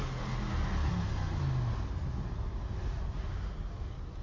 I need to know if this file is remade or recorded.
recorded